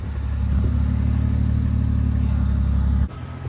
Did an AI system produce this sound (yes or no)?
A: no